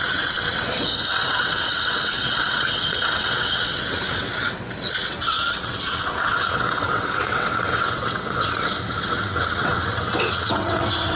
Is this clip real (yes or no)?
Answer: no